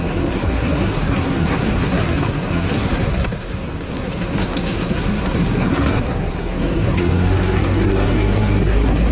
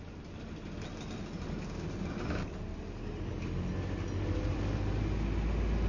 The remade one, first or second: first